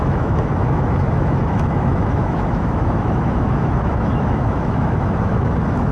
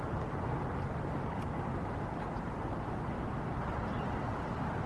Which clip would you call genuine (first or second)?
second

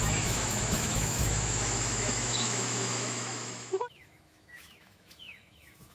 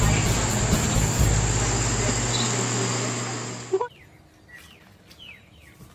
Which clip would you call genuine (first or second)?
second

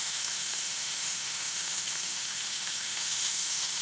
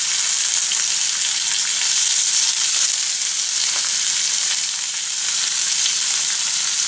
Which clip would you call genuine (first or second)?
second